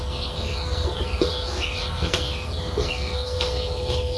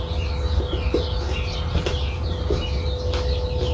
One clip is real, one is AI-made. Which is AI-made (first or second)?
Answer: first